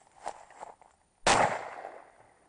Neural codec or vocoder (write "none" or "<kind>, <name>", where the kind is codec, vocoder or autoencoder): none